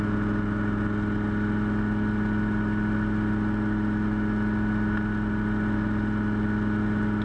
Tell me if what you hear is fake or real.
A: real